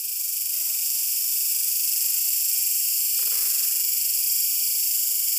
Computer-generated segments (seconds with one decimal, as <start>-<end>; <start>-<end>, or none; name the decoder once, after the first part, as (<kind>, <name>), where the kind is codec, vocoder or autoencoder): 0.0-5.4 (vocoder, BigVGAN v2)